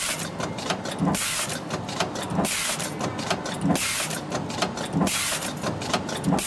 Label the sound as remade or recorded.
recorded